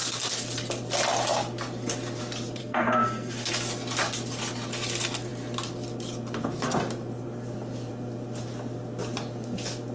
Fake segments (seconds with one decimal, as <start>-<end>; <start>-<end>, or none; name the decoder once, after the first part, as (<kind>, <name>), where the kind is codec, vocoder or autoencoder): 2.6-3.5 (codec, SNAC)